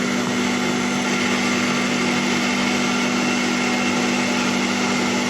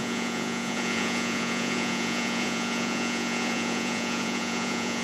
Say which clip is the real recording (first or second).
first